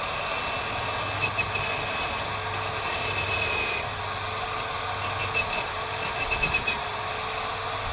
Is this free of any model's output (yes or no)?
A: yes